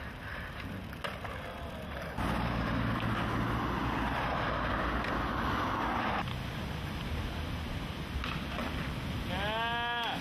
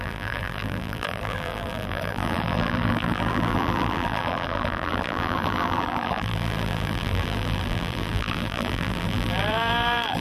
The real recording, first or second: first